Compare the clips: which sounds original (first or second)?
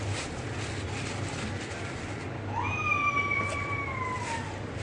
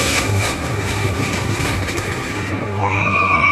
first